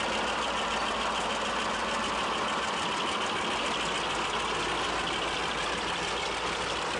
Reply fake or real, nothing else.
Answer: real